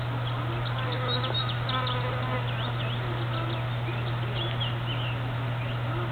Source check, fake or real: real